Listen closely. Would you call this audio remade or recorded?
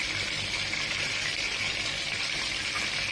recorded